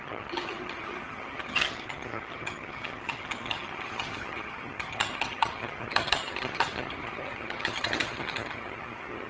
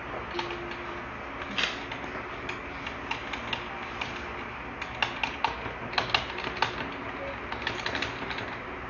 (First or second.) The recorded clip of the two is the second